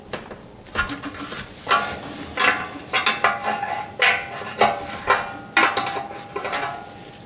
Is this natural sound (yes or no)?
yes